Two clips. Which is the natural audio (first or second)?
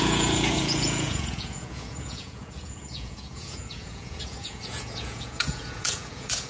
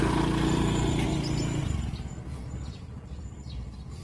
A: second